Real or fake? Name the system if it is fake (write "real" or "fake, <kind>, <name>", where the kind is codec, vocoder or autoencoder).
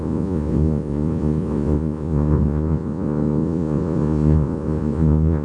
fake, vocoder, Vocos